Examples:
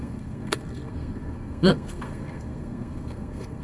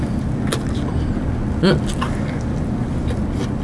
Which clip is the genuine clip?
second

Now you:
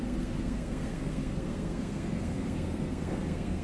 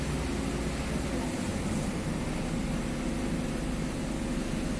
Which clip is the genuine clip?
second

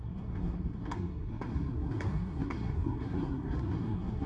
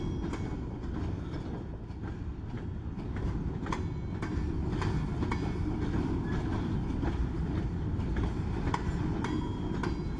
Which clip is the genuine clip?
second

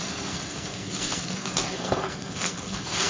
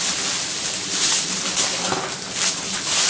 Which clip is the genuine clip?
second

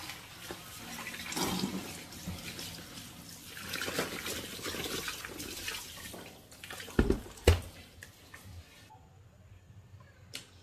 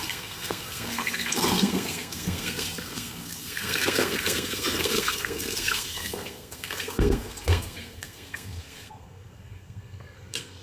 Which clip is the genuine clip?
first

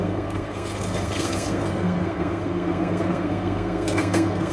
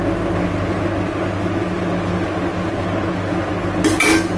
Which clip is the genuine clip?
second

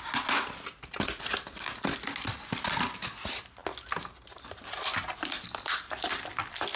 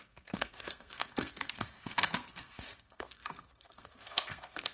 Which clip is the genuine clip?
first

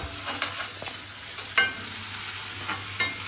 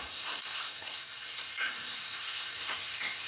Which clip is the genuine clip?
first